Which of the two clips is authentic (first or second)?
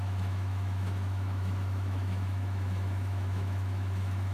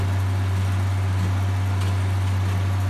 second